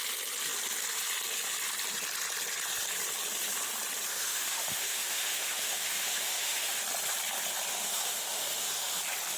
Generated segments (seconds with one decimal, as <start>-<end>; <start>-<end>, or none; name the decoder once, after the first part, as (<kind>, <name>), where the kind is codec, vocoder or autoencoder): 4.1-6.8 (autoencoder, DAC-VAE); 7.7-9.0